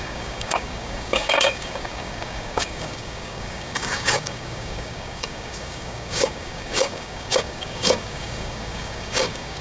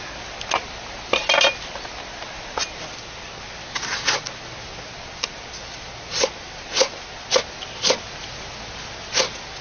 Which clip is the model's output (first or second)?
first